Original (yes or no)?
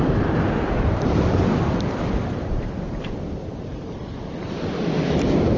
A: no